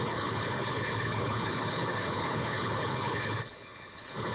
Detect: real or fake fake